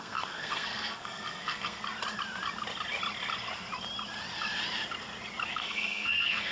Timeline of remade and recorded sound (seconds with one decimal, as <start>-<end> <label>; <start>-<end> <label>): 0.0-1.8 remade; 1.8-5.5 recorded; 5.5-6.5 remade